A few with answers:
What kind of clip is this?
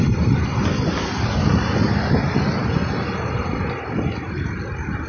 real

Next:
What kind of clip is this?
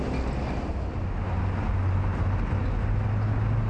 real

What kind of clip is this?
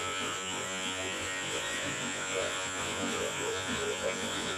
fake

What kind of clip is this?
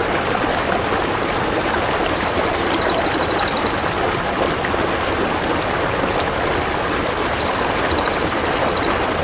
real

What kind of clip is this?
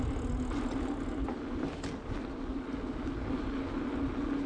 real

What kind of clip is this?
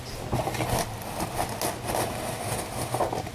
real